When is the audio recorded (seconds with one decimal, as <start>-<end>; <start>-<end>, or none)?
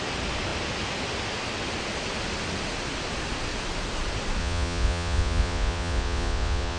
0.0-4.4